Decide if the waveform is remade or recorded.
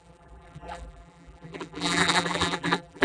remade